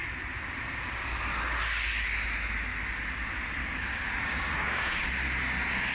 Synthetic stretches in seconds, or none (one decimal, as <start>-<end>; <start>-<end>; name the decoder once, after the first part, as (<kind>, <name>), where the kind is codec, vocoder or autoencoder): 3.6-5.0 (codec, DAC)